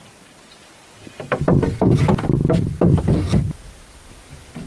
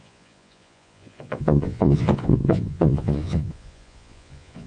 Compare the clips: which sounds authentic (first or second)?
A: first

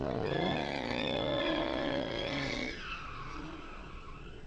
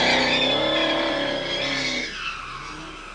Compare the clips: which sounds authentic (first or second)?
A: second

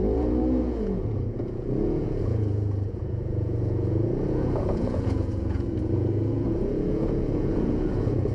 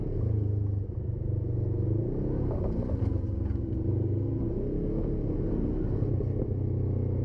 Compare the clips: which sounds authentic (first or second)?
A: second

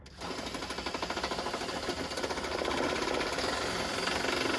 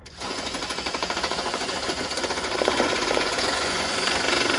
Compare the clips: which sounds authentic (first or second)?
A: first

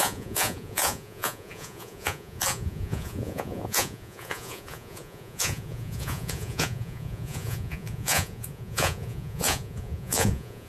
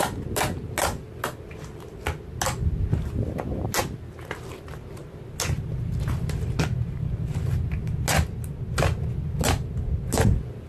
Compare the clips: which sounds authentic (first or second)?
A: second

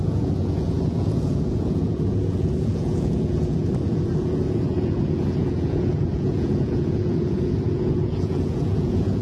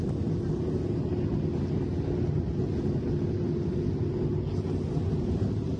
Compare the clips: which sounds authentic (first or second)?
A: second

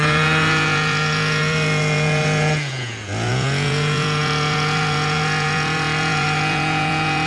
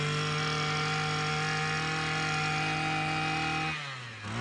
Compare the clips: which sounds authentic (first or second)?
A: second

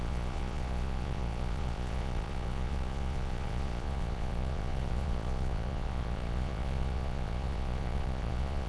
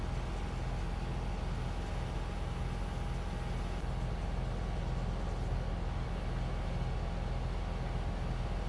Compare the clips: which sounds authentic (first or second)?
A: second